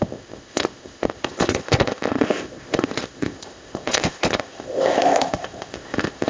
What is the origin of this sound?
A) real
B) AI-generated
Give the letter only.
B